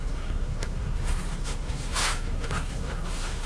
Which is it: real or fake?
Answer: fake